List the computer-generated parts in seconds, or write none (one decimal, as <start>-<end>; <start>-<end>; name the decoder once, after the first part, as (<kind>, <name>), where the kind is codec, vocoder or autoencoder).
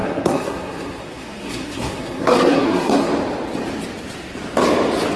0.0-3.1 (codec, SNAC)